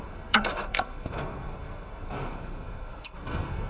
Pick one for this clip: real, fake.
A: fake